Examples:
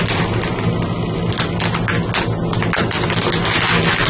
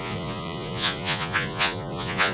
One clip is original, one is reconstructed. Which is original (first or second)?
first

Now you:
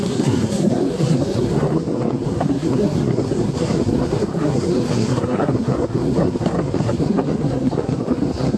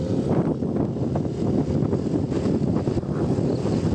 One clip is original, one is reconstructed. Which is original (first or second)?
second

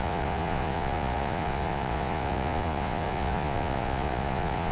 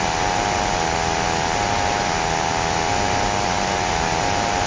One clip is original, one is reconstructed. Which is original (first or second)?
second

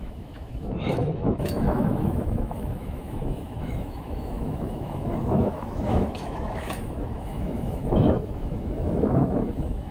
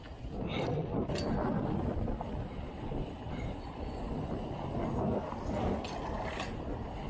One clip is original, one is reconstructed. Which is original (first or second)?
second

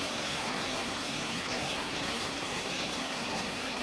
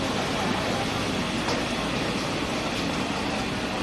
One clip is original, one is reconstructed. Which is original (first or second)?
second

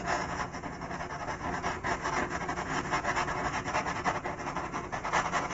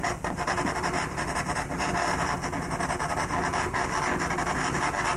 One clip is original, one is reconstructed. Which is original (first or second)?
second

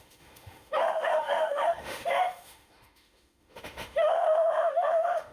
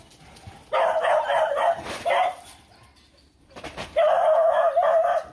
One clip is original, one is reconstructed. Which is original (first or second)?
second